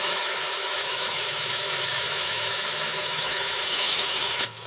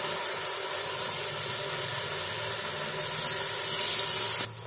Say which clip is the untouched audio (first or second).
second